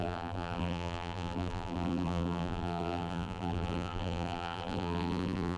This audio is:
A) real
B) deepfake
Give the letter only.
B